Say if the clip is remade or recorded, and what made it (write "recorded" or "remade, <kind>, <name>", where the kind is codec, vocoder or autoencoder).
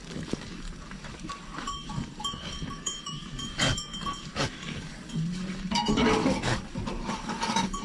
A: remade, codec, DAC